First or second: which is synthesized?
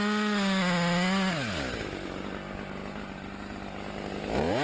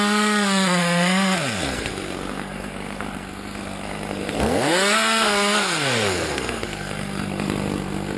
second